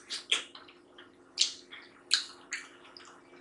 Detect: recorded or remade recorded